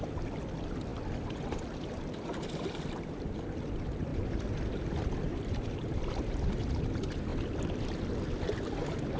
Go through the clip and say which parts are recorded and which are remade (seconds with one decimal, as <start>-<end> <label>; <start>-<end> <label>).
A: 0.0-0.9 recorded; 0.9-3.2 remade; 3.2-4.1 recorded; 4.1-6.8 remade; 6.8-7.3 recorded; 7.3-9.2 remade